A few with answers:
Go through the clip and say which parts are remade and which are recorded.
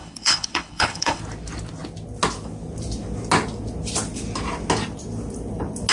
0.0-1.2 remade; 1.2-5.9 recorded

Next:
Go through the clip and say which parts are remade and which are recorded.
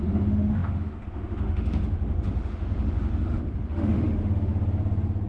0.0-4.5 remade; 4.5-5.3 recorded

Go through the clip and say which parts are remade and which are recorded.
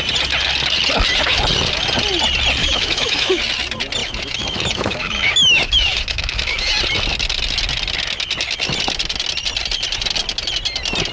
0.0-2.6 recorded; 2.6-3.4 remade; 3.4-4.0 recorded; 4.0-6.7 remade; 6.7-11.1 recorded